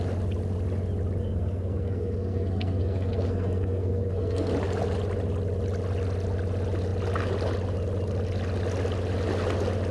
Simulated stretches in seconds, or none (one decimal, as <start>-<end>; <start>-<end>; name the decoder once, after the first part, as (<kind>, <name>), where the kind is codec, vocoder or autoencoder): 1.2-4.5 (codec, SNAC)